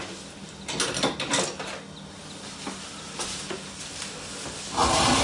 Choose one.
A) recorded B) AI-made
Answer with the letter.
A